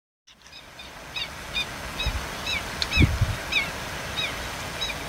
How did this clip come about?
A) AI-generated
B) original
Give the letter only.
B